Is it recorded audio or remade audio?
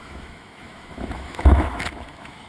remade